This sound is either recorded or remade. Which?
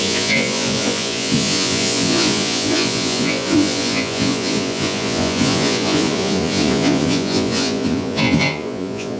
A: remade